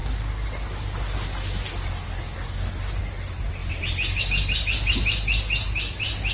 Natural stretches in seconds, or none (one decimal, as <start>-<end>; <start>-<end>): 0.0-6.3